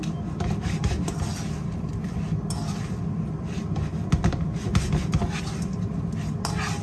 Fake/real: real